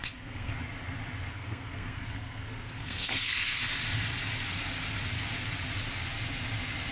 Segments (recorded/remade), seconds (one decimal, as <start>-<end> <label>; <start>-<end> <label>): 0.0-0.5 remade; 0.5-1.3 recorded; 1.3-3.6 remade; 3.6-6.9 recorded

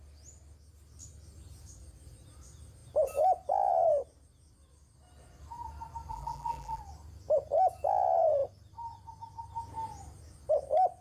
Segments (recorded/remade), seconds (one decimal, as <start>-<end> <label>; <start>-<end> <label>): 0.0-6.1 recorded; 6.1-6.8 remade; 6.8-11.0 recorded

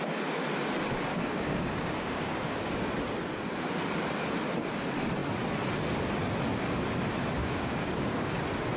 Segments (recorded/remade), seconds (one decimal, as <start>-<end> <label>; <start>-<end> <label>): 0.0-1.1 recorded; 1.1-2.9 remade; 2.9-7.4 recorded; 7.4-8.3 remade; 8.3-8.8 recorded

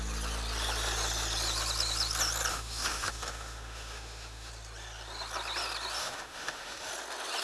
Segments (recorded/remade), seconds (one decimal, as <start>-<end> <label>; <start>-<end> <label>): 0.0-2.5 recorded; 2.5-4.5 remade; 4.5-6.0 recorded; 6.0-6.9 remade; 6.9-7.4 recorded